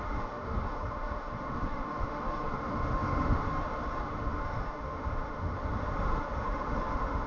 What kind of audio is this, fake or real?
fake